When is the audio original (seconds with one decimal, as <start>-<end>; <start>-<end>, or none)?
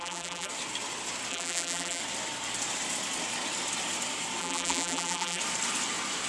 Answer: 0.5-1.3; 2.0-4.4; 5.4-6.3